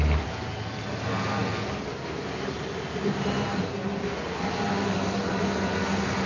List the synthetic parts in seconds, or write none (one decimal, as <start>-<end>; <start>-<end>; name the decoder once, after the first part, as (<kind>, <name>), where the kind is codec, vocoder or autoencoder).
none